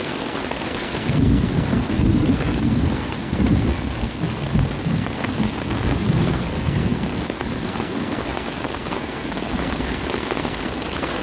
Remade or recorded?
remade